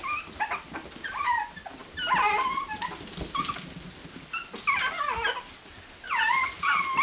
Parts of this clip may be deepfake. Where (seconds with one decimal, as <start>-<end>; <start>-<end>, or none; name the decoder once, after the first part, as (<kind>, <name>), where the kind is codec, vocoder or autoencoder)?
none